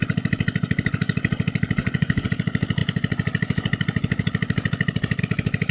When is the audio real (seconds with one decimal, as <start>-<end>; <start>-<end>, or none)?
0.0-1.8; 2.3-5.7